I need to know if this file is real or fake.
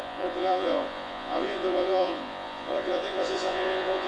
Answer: fake